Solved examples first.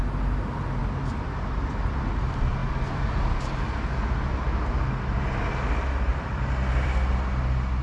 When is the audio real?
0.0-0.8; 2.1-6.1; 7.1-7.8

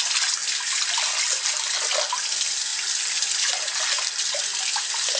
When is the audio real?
0.0-5.2

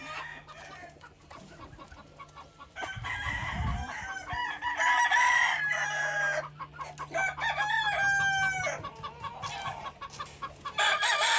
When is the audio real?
0.0-11.4

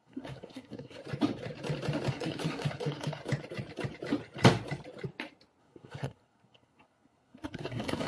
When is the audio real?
1.0-2.1; 3.2-5.6

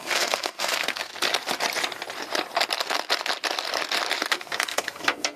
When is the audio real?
1.1-4.3